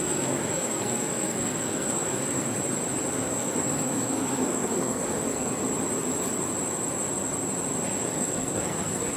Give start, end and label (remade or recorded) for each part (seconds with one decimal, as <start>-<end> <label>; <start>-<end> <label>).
0.0-2.6 remade; 2.6-3.1 recorded; 3.1-5.6 remade; 5.6-8.0 recorded; 8.0-9.2 remade